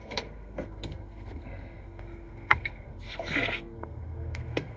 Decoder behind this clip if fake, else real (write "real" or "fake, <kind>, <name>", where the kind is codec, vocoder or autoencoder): fake, codec, SNAC